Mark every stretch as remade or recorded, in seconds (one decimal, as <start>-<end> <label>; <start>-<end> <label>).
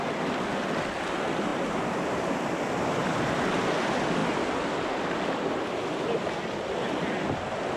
0.0-1.5 recorded; 1.5-2.4 remade; 2.4-7.8 recorded